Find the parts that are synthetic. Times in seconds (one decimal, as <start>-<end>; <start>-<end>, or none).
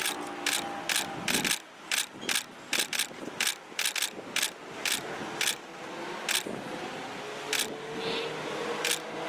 none